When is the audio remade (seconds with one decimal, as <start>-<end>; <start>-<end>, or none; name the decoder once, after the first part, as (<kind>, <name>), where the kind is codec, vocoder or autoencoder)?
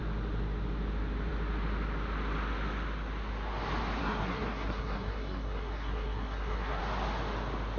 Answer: 4.0-6.8 (codec, SNAC)